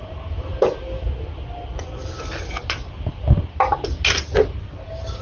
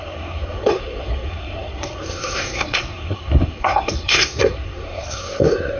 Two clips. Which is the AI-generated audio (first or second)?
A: second